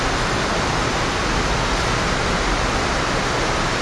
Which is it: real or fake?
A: real